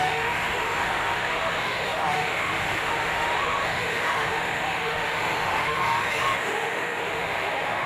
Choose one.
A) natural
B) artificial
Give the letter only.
B